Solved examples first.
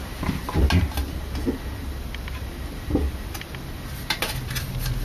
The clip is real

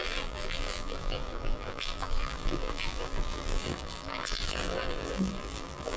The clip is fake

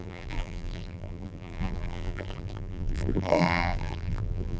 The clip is fake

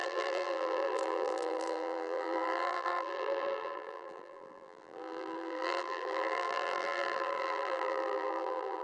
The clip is fake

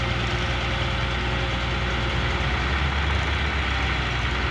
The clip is real